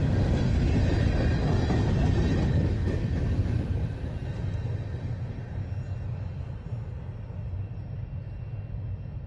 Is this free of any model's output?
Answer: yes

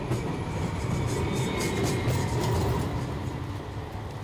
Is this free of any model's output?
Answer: yes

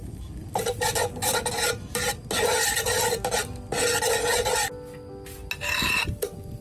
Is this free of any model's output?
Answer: yes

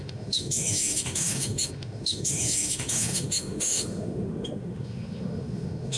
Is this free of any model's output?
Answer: no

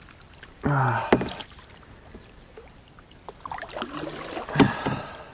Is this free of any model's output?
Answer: yes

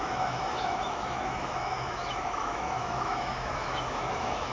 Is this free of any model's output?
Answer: no